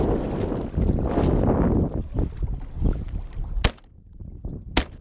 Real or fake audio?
real